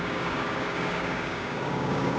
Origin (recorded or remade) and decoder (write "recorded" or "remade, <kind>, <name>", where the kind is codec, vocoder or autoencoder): remade, codec, DAC